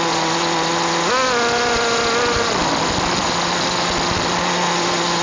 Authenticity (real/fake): real